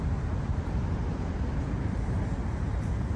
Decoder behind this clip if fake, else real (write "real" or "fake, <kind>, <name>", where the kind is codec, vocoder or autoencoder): fake, vocoder, BigVGAN v2